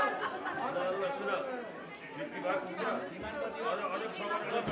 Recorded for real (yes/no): yes